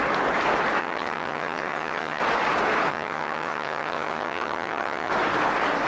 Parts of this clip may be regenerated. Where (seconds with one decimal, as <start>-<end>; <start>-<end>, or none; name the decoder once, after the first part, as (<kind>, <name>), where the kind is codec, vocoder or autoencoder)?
0.8-2.2 (vocoder, HiFi-GAN); 2.9-5.1